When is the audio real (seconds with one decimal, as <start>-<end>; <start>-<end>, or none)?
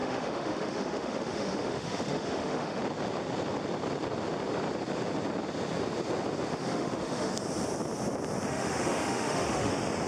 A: 2.8-6.5; 7.3-8.5; 9.7-10.1